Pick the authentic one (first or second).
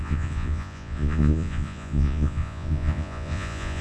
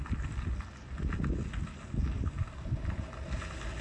second